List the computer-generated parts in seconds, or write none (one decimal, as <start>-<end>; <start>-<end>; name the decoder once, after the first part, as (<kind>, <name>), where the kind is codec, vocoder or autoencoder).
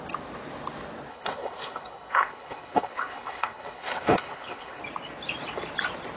1.1-4.8 (codec, HILCodec)